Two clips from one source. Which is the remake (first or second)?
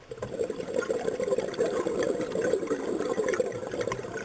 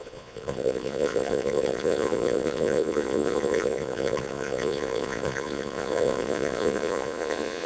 second